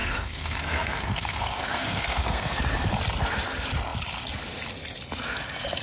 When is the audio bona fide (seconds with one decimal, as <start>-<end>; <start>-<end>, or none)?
2.6-5.8